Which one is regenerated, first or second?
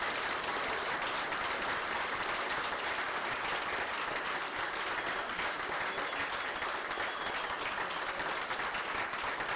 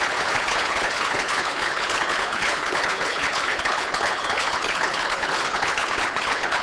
second